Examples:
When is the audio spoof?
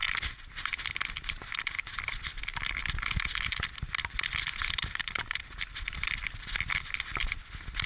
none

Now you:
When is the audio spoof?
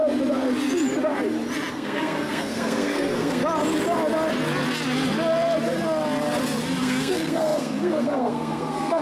1.7-3.4; 6.8-9.0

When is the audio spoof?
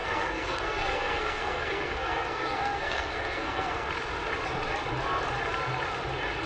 0.0-3.9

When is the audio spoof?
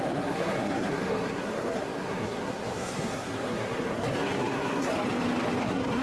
0.0-4.9; 5.6-6.0